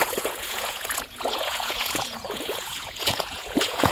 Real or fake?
fake